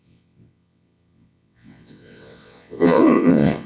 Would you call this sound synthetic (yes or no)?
yes